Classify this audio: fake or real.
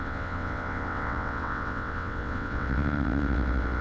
fake